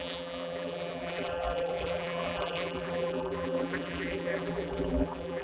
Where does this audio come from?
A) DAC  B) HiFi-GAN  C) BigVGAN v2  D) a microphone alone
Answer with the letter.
C